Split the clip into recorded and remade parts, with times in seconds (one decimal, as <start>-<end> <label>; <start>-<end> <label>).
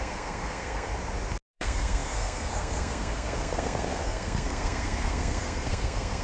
0.0-0.9 remade; 0.9-1.5 recorded; 1.5-6.2 remade